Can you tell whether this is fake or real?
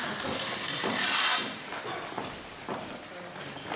real